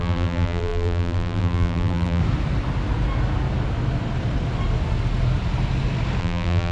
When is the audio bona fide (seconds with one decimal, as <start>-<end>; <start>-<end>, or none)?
2.2-6.2